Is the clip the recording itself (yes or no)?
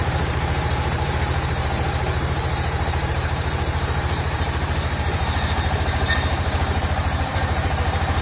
no